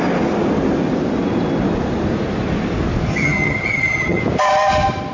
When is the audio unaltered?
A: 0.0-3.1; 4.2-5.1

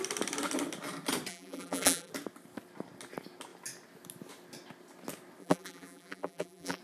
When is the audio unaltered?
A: 0.0-1.3; 2.1-5.4